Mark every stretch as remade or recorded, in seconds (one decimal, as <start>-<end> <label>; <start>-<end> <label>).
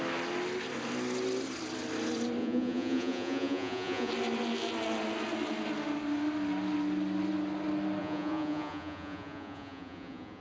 0.0-2.4 recorded; 2.4-4.1 remade; 4.1-8.0 recorded; 8.0-10.4 remade